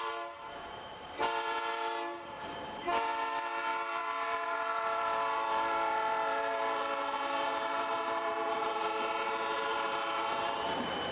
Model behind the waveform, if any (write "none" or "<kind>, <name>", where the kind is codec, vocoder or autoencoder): vocoder, BigVGAN v2